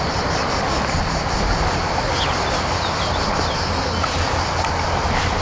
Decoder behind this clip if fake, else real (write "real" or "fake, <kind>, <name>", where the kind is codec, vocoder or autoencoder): real